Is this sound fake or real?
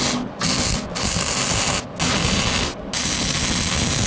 real